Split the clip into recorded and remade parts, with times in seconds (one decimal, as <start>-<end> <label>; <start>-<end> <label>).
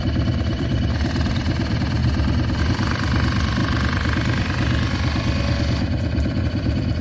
0.0-2.0 remade; 2.0-2.6 recorded; 2.6-3.6 remade; 3.6-6.4 recorded; 6.4-7.0 remade